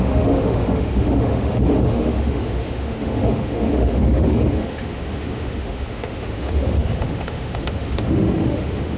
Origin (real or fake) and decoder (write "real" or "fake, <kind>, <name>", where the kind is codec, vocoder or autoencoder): fake, autoencoder, DAC-VAE